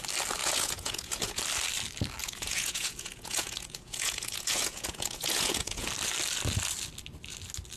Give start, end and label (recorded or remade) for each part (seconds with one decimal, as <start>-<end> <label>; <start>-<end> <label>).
0.0-0.4 recorded; 0.4-1.4 remade; 1.4-2.2 recorded; 2.2-5.9 remade; 5.9-7.8 recorded